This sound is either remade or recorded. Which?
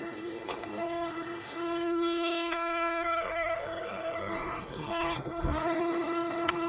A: remade